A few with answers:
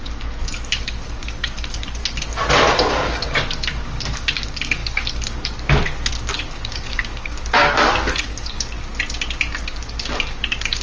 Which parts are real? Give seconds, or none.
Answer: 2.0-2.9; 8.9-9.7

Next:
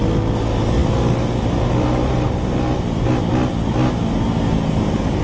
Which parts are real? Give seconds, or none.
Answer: 0.0-5.2

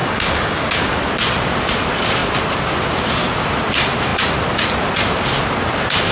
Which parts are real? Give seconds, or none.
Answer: 0.9-6.1

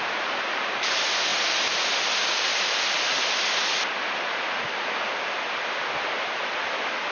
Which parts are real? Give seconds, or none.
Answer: 0.0-7.1

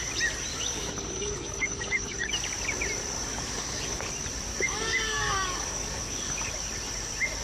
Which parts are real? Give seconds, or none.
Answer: 0.0-0.5; 2.3-3.3; 4.1-4.5; 6.5-7.4

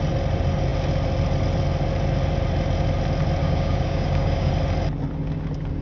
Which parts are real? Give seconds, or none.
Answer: 0.0-3.4; 4.5-5.8

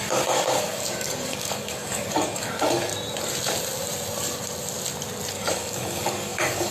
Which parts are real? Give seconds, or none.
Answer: 2.9-5.3

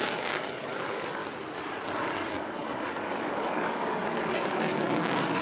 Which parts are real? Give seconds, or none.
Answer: 1.2-2.0